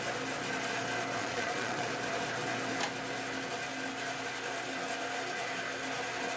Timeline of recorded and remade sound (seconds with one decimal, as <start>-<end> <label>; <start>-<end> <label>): 0.0-1.2 recorded; 1.2-1.9 remade; 1.9-6.4 recorded